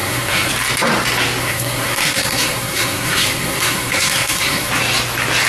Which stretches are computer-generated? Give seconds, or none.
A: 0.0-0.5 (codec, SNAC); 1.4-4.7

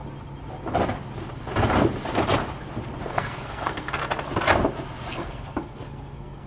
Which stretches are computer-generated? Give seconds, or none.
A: 3.1-4.0 (codec, SNAC); 5.1-6.5

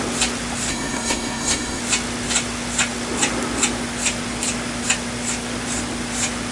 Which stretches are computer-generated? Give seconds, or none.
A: 0.7-1.8 (codec, SNAC)

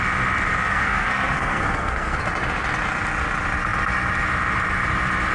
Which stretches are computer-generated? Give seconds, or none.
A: 0.7-2.2 (codec, SNAC)